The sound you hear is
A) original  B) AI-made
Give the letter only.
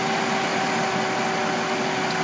A